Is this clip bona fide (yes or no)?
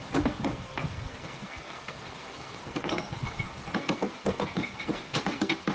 no